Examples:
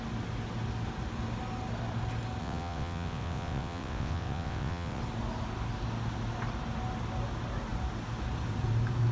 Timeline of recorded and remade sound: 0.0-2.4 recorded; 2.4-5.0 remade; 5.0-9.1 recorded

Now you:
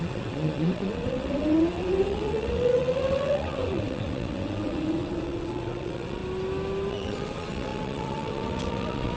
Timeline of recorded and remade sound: 0.0-6.2 remade; 6.2-6.9 recorded; 6.9-9.2 remade

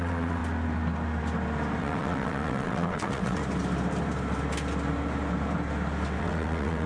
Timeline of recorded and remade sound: 0.0-0.4 remade; 0.4-1.8 recorded; 1.8-3.4 remade; 3.4-6.2 recorded; 6.2-6.9 remade

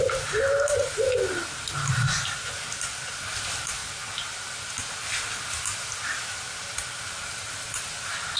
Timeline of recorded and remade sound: 0.0-8.4 recorded